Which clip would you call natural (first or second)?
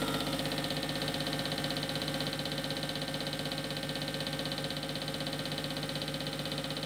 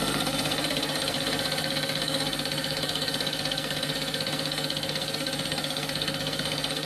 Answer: first